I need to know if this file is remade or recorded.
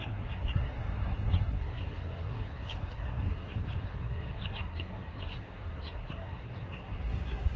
remade